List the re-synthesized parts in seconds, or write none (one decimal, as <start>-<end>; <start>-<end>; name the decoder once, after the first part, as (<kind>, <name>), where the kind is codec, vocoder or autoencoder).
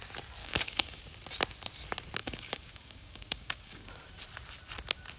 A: 0.4-1.0 (codec, DAC); 2.2-3.9